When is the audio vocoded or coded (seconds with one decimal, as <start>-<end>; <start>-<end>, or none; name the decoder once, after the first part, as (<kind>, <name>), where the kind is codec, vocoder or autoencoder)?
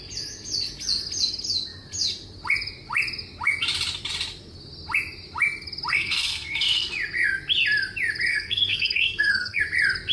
5.9-6.9 (codec, SNAC); 8.3-9.6